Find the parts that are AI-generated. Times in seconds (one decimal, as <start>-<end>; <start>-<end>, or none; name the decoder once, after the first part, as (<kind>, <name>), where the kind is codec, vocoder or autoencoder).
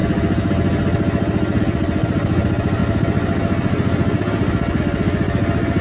none